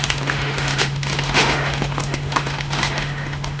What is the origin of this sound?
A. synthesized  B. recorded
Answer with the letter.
A